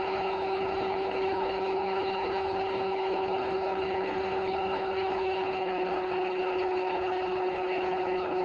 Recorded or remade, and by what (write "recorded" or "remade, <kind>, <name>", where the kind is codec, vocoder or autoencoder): remade, codec, HILCodec